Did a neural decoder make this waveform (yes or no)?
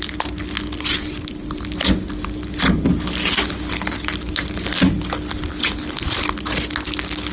no